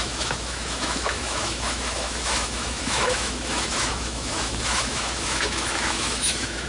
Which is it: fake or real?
fake